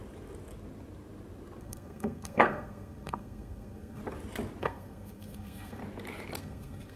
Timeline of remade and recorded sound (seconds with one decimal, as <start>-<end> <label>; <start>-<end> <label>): 0.0-1.6 recorded; 1.6-4.0 remade; 4.0-4.6 recorded; 4.6-5.8 remade; 5.8-6.4 recorded; 6.4-7.0 remade